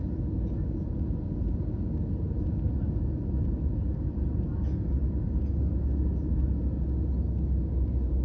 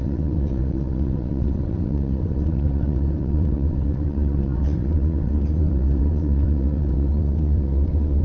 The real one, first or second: first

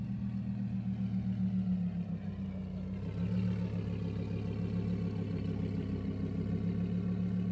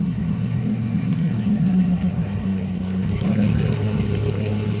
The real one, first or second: first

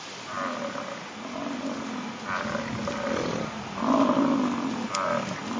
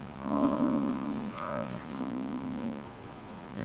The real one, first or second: first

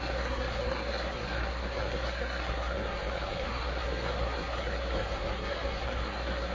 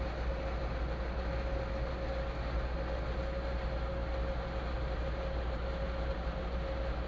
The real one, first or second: second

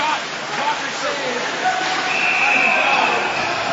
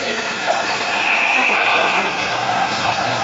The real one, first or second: first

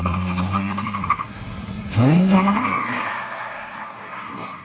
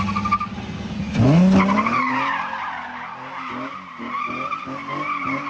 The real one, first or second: second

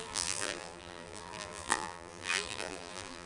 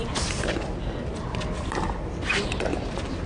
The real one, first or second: second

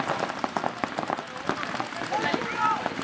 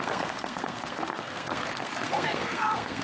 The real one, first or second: first